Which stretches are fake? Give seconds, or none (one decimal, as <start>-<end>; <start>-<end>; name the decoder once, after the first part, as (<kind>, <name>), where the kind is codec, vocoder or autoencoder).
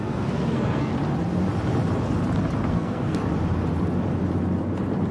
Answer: 0.0-0.9 (codec, SNAC); 2.7-3.2